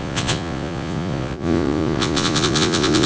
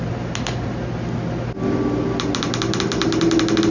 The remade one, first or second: first